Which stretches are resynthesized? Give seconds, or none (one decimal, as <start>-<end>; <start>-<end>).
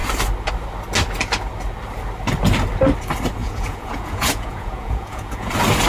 3.4-5.5